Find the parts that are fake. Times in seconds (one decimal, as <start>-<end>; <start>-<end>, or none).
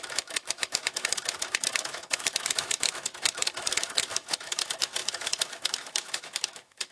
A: 0.0-6.9